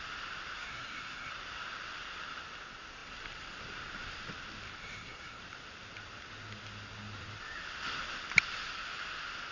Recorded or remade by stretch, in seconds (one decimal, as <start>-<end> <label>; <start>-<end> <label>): 0.0-0.6 recorded; 0.6-1.3 remade; 1.3-4.8 recorded; 4.8-5.4 remade; 5.4-9.5 recorded